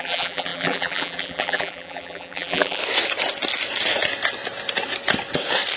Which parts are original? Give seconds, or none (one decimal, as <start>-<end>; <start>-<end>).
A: 2.8-5.8